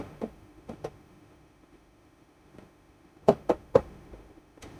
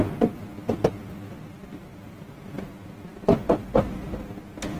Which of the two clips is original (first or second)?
second